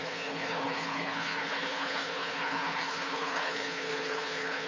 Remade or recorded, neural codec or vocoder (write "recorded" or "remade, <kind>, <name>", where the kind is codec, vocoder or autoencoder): remade, codec, HILCodec